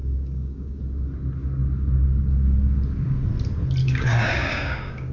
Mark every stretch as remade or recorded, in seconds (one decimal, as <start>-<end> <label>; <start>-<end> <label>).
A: 0.0-0.8 remade; 0.8-3.8 recorded; 3.8-5.1 remade